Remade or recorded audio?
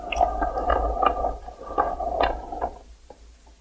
recorded